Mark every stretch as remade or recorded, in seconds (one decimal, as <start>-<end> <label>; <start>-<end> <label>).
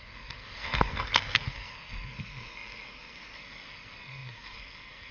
0.0-5.1 remade